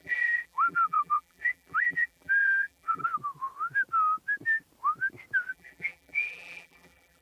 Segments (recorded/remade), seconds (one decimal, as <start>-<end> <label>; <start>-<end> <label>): 0.0-3.0 remade; 3.0-5.5 recorded; 5.5-7.2 remade